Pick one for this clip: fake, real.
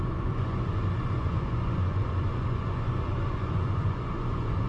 fake